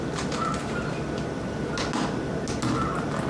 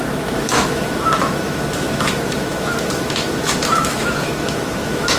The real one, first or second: first